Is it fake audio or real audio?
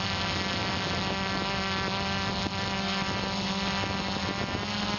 real